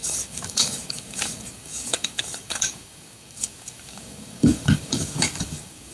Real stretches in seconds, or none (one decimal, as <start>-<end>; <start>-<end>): none

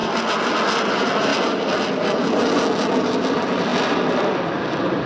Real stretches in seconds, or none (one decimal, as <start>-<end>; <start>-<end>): 0.0-0.9; 1.3-3.2

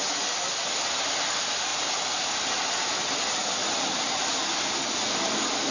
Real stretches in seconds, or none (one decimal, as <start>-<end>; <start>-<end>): 0.0-5.7

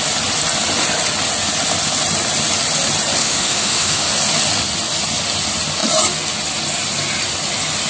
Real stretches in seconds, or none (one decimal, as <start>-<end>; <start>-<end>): 0.0-3.2; 4.1-7.9

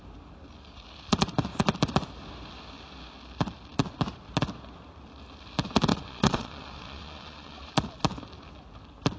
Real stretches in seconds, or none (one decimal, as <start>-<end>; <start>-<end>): 0.0-5.9; 7.7-9.2

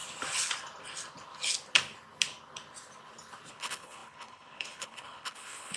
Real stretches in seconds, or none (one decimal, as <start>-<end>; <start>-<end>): 0.0-3.5

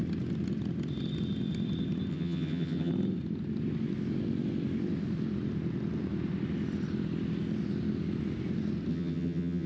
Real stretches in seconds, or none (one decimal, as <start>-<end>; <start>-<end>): 0.0-2.1; 2.9-8.9